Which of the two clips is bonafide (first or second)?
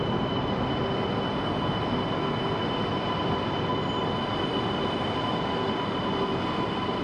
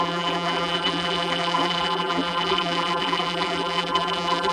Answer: first